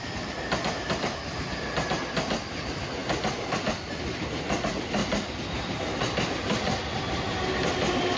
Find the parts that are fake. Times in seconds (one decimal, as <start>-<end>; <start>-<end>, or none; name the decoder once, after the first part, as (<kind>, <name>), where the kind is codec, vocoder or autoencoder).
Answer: none